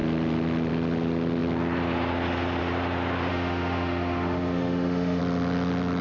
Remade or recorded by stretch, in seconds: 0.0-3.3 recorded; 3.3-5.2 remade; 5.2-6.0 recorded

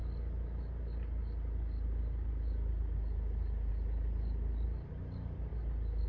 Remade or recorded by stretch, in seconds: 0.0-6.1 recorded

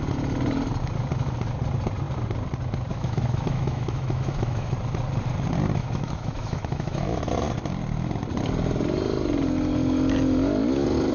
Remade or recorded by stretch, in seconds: 0.0-2.9 recorded; 2.9-4.7 remade; 4.7-5.8 recorded; 5.8-7.2 remade; 7.2-11.1 recorded